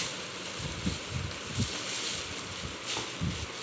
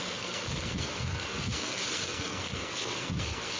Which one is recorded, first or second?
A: first